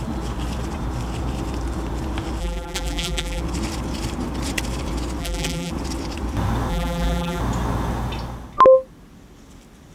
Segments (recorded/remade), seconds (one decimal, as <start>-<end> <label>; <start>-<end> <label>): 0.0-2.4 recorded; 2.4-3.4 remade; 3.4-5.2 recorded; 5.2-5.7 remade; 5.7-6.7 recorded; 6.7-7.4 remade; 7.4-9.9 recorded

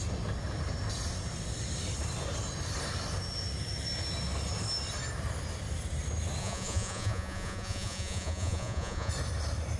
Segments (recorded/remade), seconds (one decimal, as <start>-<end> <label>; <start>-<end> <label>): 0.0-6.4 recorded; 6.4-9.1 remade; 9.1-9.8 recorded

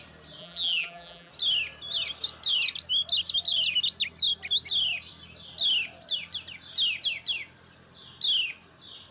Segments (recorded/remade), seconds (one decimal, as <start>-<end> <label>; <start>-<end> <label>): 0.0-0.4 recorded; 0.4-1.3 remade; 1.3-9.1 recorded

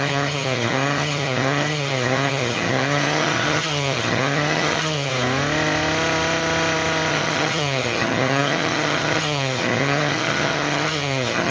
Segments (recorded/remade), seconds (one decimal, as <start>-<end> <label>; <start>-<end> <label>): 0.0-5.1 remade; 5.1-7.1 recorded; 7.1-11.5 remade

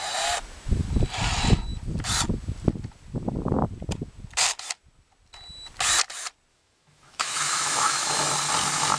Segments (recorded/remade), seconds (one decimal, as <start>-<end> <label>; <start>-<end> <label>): 0.0-6.5 recorded; 6.5-8.3 remade; 8.3-9.0 recorded